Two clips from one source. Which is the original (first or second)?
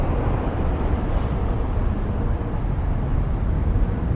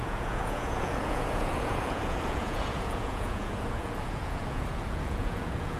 first